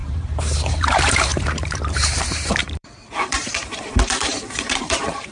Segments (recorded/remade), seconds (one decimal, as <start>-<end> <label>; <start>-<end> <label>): 0.0-5.3 remade